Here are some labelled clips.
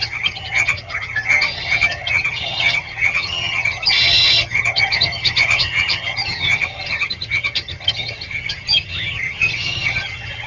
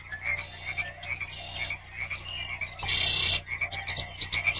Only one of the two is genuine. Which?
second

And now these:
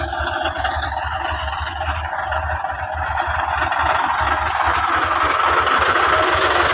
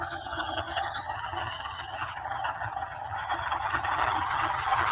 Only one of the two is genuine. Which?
first